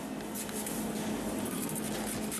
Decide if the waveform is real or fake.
real